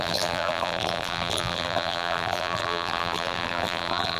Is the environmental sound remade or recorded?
remade